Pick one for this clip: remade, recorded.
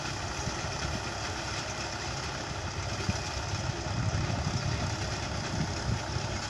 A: recorded